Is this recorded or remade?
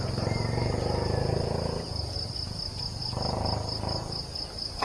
recorded